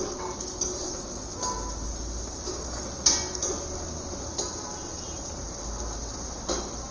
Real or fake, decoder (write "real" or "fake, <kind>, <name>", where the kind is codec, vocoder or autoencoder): real